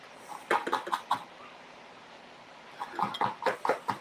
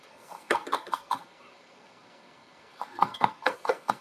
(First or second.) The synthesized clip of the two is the second